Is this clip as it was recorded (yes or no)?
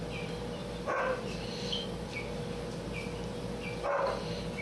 yes